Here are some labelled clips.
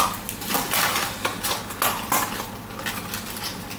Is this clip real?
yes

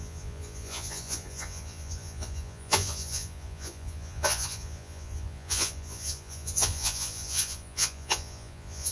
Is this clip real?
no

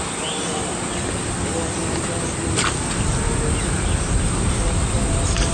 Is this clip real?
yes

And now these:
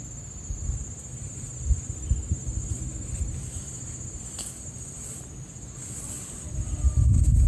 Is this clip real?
yes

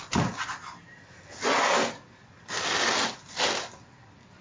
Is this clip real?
yes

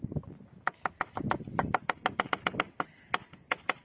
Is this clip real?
yes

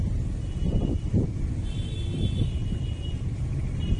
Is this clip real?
yes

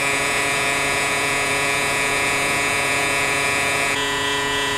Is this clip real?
no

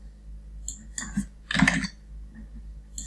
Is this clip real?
yes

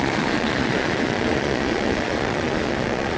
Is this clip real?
no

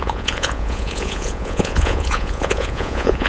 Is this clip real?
no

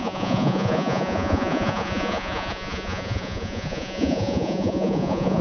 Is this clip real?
no